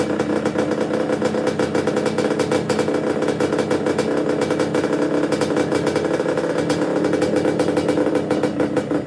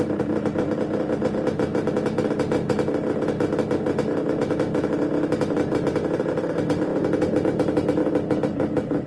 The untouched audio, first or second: first